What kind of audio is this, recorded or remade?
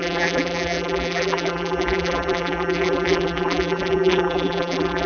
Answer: remade